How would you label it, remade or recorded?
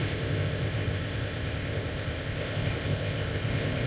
remade